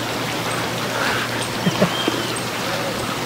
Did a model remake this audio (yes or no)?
no